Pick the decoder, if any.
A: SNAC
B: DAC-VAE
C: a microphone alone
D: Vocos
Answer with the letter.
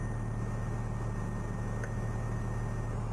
C